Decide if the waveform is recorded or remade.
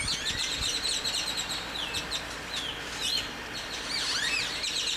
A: recorded